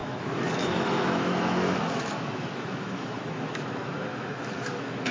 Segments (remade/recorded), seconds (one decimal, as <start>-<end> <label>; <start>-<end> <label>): 0.0-5.1 remade